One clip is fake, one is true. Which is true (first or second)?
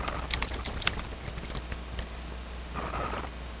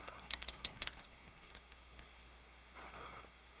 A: first